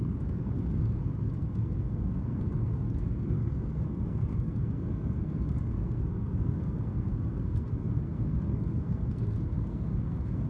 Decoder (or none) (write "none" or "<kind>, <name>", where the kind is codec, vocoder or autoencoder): codec, SNAC